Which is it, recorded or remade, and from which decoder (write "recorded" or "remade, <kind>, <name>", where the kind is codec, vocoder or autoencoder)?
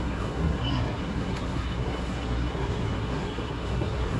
remade, codec, SNAC